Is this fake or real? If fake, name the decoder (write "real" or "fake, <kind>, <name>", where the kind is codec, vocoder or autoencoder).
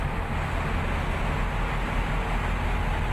real